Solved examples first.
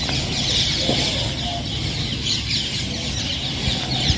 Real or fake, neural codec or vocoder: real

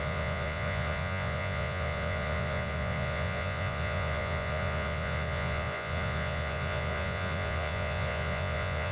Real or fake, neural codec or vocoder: fake, vocoder, Vocos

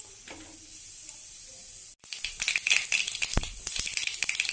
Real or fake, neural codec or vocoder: real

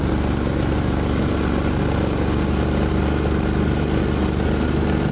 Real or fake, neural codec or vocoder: real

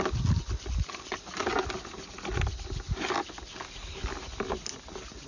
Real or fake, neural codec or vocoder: real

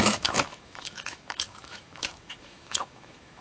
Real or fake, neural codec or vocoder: fake, autoencoder, DAC-VAE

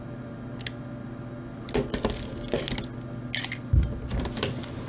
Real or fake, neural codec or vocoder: real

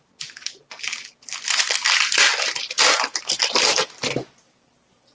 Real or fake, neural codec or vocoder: real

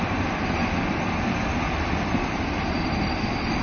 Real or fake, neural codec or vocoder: fake, vocoder, BigVGAN v2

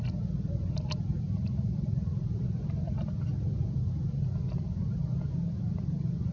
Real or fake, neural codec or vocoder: real